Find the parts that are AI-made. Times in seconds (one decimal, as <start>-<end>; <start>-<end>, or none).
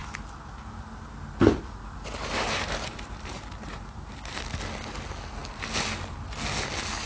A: 2.1-4.4